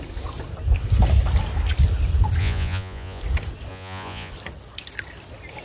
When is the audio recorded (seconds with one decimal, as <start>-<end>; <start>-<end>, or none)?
0.0-2.4; 3.2-3.7; 4.3-5.6